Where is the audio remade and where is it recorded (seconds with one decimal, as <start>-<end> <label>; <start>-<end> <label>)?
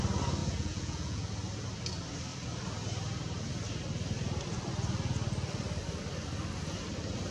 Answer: 0.0-0.4 recorded; 0.4-1.3 remade; 1.3-7.3 recorded